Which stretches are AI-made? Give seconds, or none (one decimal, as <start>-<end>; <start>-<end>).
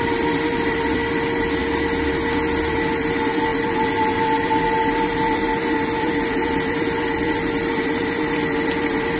0.0-1.6; 2.1-9.2